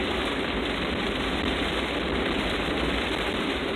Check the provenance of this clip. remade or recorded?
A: recorded